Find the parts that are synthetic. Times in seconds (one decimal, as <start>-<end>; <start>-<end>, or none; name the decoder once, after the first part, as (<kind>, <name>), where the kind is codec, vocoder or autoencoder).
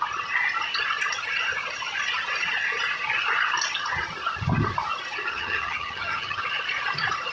5.3-6.4 (vocoder, HiFi-GAN)